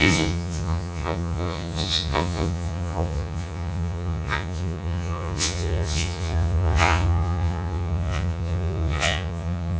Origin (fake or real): fake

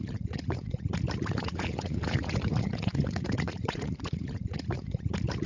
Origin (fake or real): fake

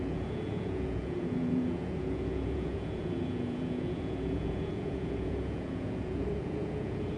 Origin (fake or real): fake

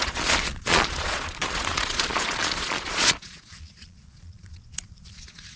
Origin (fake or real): fake